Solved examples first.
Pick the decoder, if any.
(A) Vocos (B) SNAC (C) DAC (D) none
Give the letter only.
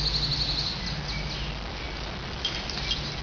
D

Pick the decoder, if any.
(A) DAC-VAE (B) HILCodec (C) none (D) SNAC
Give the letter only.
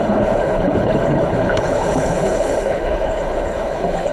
B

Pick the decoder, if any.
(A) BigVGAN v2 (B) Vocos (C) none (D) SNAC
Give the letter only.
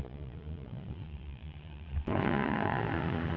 B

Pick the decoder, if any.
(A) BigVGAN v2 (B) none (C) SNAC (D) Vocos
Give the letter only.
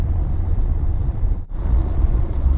D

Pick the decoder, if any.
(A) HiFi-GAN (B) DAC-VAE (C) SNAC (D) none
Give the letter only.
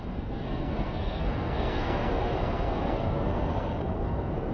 C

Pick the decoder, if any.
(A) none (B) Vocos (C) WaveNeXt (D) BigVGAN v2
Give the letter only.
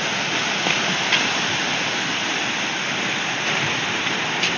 A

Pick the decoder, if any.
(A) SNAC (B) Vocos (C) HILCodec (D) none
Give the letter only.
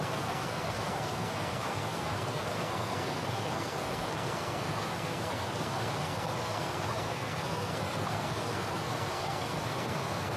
A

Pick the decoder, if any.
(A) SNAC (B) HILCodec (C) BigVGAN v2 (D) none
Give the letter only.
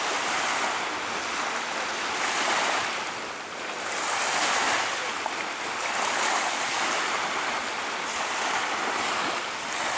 D